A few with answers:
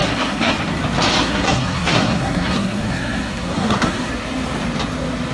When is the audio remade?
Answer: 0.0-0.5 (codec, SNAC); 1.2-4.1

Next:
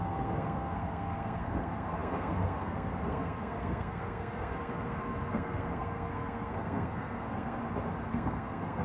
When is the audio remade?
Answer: 0.0-7.6 (codec, SNAC); 8.1-8.8